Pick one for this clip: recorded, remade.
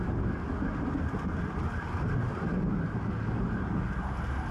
recorded